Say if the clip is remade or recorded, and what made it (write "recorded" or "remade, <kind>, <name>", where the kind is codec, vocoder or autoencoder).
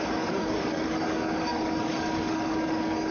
remade, codec, DAC